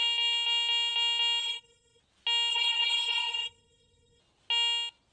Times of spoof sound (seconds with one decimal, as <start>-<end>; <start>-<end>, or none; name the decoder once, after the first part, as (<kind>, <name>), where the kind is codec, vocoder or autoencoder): 1.4-2.0 (codec, SNAC); 2.5-4.2

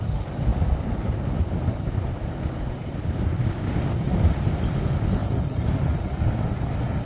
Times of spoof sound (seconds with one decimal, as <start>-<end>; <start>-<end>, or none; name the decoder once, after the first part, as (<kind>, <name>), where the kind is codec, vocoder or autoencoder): 0.0-0.5 (vocoder, BigVGAN v2); 1.9-7.0